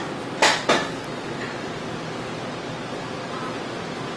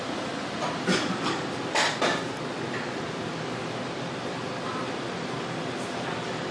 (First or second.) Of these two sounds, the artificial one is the second